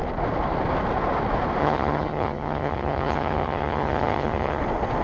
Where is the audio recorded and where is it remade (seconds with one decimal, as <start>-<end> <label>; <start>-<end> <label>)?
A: 0.0-1.6 recorded; 1.6-4.6 remade; 4.6-5.0 recorded